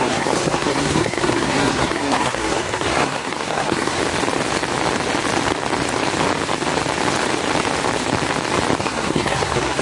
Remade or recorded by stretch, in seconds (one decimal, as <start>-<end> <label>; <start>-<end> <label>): 0.0-4.0 remade; 4.0-8.8 recorded; 8.8-9.8 remade